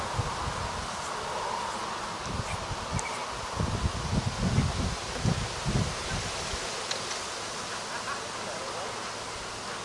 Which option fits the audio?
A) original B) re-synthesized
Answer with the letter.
A